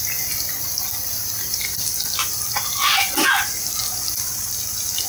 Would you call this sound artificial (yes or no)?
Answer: no